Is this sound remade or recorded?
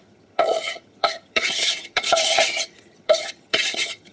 remade